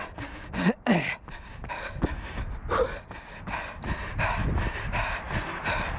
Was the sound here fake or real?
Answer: real